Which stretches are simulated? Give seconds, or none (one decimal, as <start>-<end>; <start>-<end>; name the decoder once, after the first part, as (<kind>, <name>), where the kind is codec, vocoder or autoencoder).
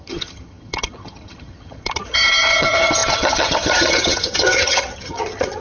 0.0-5.6 (vocoder, HiFi-GAN)